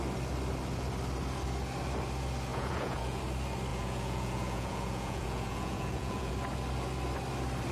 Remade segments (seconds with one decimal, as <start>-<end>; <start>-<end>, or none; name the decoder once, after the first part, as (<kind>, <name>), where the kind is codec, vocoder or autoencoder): 2.5-3.2 (vocoder, Vocos); 3.7-6.3